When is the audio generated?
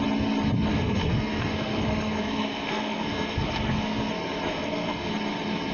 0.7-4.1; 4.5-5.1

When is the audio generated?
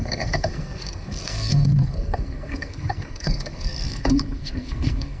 0.0-5.2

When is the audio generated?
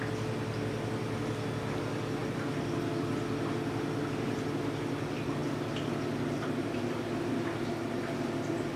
none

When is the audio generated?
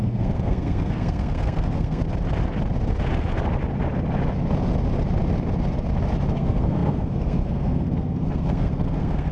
0.0-2.0; 6.3-9.3